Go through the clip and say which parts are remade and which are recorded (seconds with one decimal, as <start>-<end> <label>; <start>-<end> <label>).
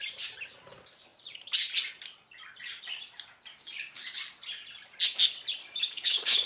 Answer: 0.0-3.5 recorded; 3.5-4.2 remade; 4.2-5.6 recorded; 5.6-6.5 remade